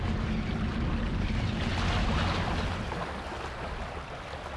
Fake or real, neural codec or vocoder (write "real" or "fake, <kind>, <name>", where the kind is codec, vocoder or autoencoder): real